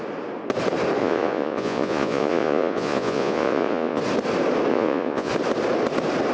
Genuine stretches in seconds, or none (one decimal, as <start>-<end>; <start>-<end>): 0.0-1.0; 4.0-4.7; 5.3-6.3